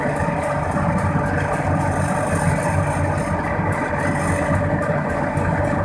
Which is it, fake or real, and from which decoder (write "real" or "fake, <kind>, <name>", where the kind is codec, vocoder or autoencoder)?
real